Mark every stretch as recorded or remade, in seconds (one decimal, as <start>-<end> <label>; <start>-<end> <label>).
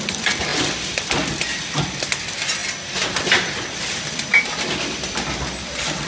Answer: 0.0-6.1 recorded